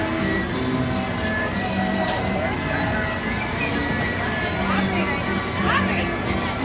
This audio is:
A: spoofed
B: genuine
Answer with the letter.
B